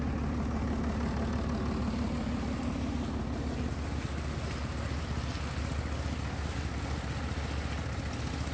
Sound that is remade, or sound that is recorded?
recorded